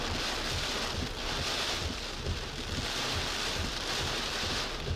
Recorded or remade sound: recorded